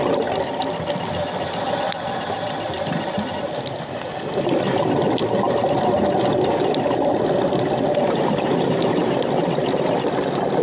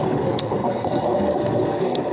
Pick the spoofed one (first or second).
second